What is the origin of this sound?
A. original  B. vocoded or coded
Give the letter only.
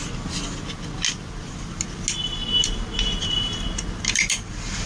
A